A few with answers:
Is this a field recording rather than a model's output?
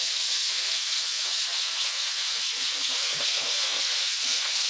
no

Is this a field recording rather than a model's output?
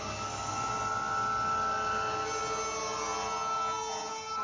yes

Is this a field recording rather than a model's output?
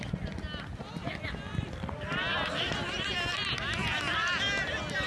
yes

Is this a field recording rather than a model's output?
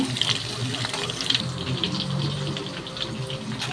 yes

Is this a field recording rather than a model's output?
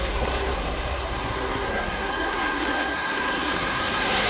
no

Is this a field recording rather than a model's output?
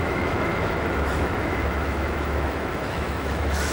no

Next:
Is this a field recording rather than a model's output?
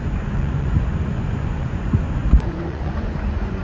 no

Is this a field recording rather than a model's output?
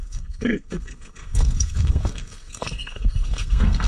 no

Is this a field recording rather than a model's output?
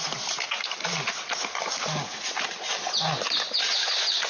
yes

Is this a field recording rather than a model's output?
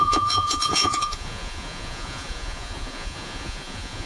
no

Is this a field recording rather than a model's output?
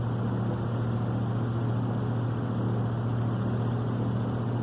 yes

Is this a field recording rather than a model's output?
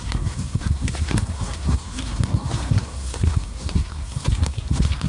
no